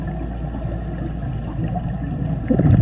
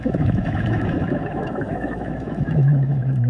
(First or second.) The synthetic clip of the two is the second